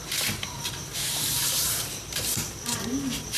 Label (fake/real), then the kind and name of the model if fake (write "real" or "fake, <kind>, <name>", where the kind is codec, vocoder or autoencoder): fake, vocoder, BigVGAN v2